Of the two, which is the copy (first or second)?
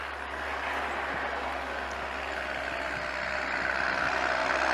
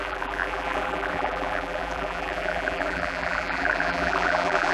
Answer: second